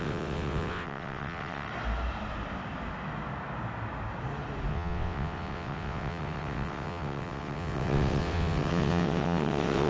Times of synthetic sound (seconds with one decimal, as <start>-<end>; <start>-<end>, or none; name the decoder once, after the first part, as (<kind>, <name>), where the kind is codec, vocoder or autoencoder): 0.0-1.7 (vocoder, WaveNeXt); 4.7-9.9